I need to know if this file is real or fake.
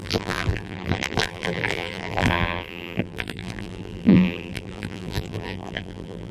fake